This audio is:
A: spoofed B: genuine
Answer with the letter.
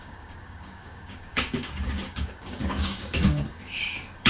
A